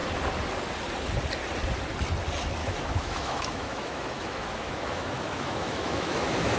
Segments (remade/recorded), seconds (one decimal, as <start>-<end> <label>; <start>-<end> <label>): 0.0-2.6 recorded; 2.6-6.6 remade